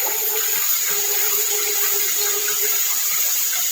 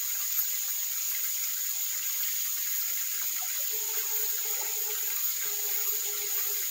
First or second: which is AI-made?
first